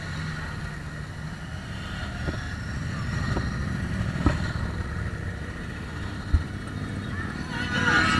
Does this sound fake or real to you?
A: real